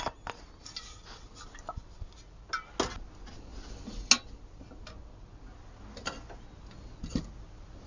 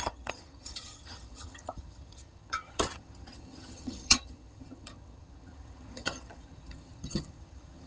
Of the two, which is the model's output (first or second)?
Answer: second